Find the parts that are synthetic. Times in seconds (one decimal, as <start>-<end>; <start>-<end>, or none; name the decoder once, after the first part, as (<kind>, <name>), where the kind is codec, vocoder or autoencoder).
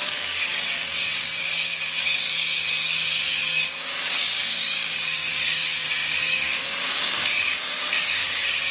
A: 0.0-8.7 (codec, DAC)